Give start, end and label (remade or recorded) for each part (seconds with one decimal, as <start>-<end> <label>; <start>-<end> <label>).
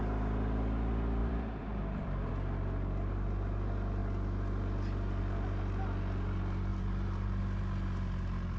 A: 0.0-1.2 recorded; 1.2-2.3 remade; 2.3-6.7 recorded; 6.7-7.4 remade; 7.4-8.6 recorded